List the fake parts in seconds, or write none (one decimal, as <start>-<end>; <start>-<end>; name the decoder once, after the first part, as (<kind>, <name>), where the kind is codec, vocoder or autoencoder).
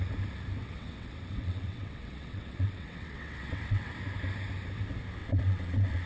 0.6-3.9 (vocoder, WaveNeXt); 5.2-6.1